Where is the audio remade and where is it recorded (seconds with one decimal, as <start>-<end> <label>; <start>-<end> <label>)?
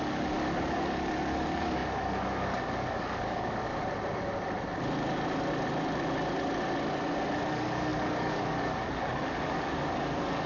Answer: 0.0-3.7 remade; 3.7-7.5 recorded; 7.5-10.5 remade